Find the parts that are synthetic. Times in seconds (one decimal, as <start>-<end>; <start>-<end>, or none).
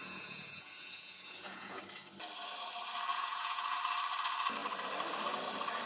0.0-1.8; 3.1-3.8